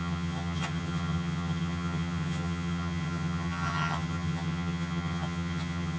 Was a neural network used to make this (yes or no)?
yes